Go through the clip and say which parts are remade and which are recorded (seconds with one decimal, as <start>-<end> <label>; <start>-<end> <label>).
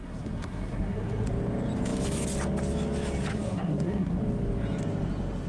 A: 0.0-1.3 remade; 1.3-3.3 recorded; 3.3-4.2 remade; 4.2-5.5 recorded